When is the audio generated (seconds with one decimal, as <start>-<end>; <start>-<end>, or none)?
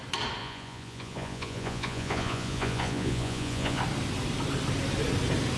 0.4-3.8